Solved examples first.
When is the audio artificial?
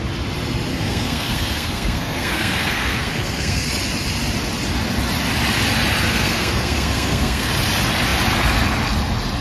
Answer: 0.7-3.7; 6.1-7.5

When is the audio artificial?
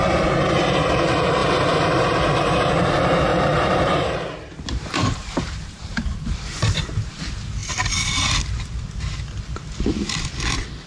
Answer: 1.4-2.7; 3.3-7.1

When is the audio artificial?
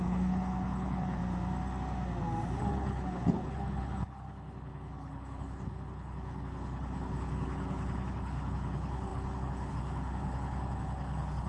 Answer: 0.0-1.2; 2.6-11.5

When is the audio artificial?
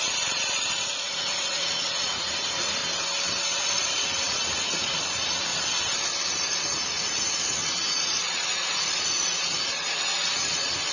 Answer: 0.0-2.8; 3.4-5.5; 6.3-10.9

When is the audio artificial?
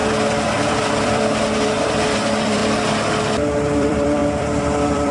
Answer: 0.0-2.6; 3.3-5.1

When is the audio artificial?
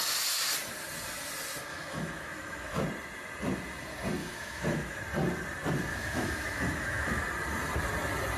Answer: 1.7-2.8; 4.2-5.0; 5.9-7.2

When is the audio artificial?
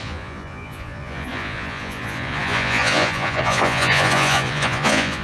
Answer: 0.0-5.2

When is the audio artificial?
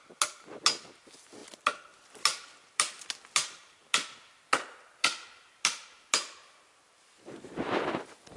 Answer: none